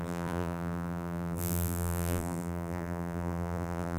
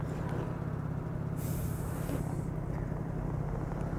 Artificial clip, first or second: first